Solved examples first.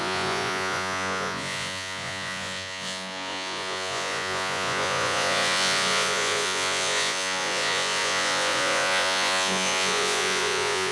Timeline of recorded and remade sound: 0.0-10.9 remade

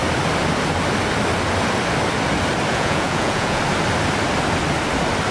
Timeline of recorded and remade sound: 0.0-2.7 recorded; 2.7-3.6 remade; 3.6-5.3 recorded

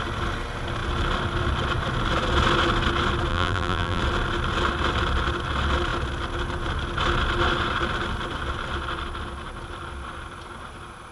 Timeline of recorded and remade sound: 0.0-3.3 recorded; 3.3-4.0 remade; 4.0-11.1 recorded